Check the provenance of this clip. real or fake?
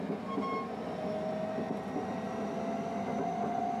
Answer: real